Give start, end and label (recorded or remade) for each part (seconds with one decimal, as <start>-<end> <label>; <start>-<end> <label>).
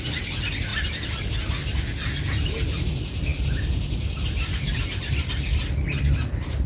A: 0.0-6.7 recorded